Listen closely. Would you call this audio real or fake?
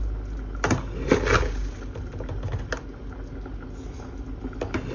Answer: real